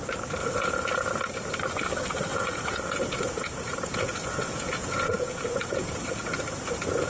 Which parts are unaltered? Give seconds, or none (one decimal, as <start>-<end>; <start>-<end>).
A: 0.0-0.4; 0.9-2.3; 6.0-7.1